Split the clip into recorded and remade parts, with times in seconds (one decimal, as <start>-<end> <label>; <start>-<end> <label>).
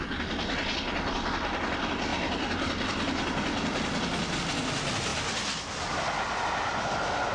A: 0.0-7.3 recorded